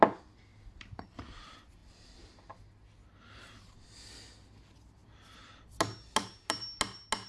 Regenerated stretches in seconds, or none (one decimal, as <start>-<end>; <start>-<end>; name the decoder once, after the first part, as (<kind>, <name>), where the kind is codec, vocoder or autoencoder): 0.5-1.3 (vocoder, BigVGAN v2)